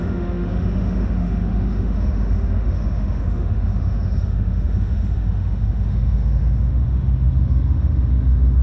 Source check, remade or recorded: remade